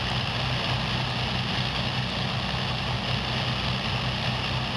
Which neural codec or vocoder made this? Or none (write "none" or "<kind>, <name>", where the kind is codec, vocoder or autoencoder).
none